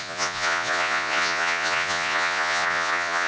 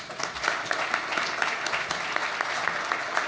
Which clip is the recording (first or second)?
second